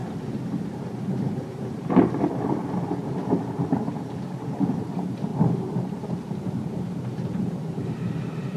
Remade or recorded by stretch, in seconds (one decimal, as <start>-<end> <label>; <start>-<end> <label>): 0.0-0.6 recorded; 0.6-5.3 remade; 5.3-6.1 recorded; 6.1-8.6 remade